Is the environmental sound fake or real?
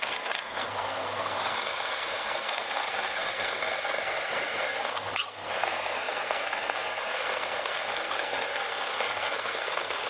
fake